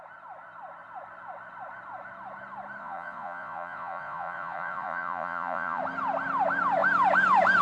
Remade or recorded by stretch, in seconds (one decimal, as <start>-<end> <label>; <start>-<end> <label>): 0.0-2.8 recorded; 2.8-5.8 remade; 5.8-7.6 recorded